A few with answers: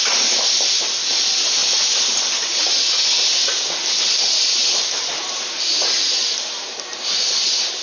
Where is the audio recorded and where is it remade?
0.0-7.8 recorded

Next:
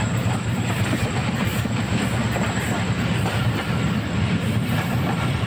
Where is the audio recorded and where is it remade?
0.0-1.5 remade; 1.5-4.8 recorded; 4.8-5.5 remade

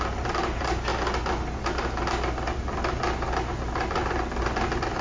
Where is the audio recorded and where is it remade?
0.0-5.0 recorded